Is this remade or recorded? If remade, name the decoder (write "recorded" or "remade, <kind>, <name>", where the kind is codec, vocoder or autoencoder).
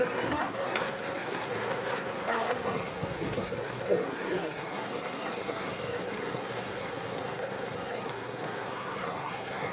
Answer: remade, codec, SNAC